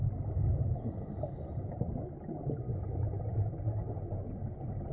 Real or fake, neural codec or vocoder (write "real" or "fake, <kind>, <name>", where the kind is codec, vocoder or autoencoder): real